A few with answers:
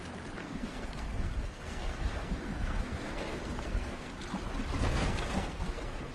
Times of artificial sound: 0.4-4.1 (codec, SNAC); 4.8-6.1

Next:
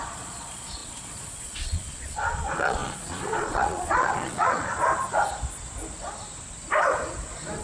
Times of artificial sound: 0.0-4.8 (vocoder, Vocos)

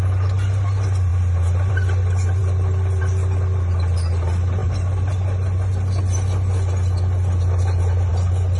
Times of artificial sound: none

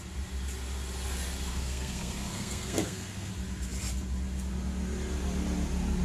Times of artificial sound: 1.5-3.3 (codec, SNAC)

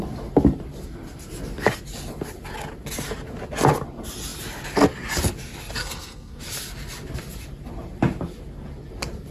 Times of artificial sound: 5.8-6.4 (codec, SNAC)

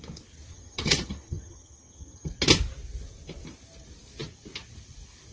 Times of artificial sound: 0.5-2.3 (vocoder, HiFi-GAN)

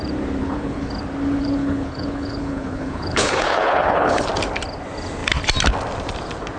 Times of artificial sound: 0.4-0.9 (codec, HILCodec); 1.4-4.3

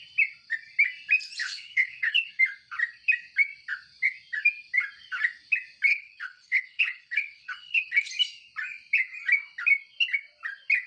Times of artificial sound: 1.4-2.3 (codec, HILCodec); 5.9-8.1